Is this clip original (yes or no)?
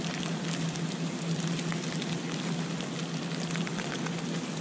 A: yes